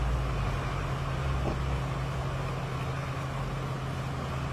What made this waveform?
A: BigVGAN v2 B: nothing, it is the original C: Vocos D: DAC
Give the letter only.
B